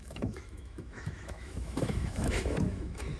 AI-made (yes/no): yes